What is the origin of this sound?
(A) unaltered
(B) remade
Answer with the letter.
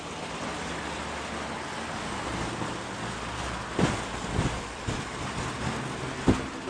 A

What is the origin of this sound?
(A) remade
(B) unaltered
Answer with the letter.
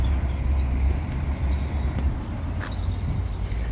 B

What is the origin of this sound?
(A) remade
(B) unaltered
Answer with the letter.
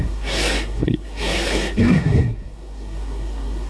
A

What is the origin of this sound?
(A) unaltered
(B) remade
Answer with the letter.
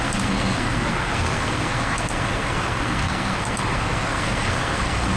B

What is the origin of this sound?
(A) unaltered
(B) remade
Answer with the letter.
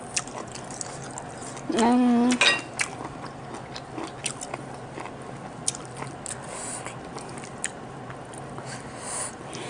A